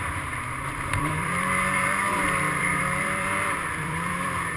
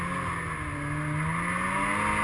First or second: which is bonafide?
second